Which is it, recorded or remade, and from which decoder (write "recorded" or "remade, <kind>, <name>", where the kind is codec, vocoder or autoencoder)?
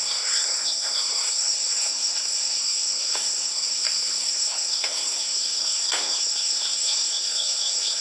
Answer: remade, codec, SNAC